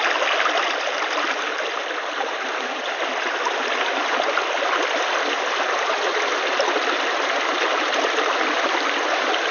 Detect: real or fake real